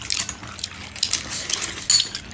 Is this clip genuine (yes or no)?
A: yes